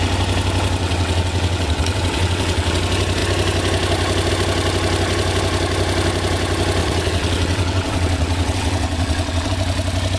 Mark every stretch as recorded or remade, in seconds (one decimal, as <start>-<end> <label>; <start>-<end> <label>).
0.0-0.8 recorded; 0.8-2.8 remade; 2.8-6.8 recorded; 6.8-9.5 remade; 9.5-10.2 recorded